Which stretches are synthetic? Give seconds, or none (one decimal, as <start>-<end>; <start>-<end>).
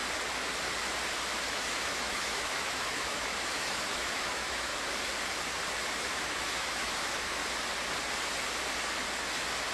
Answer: 1.5-4.7; 6.0-7.4